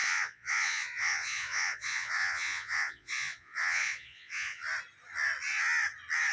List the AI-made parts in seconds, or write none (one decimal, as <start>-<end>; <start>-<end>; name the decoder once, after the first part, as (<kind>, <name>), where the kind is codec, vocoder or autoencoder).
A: 0.0-4.6 (vocoder, Vocos)